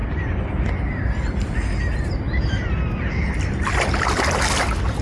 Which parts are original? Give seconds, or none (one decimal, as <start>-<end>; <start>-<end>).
0.0-5.0